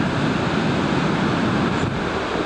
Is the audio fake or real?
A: real